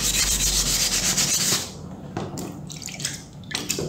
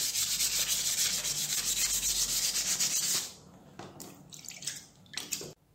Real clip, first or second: second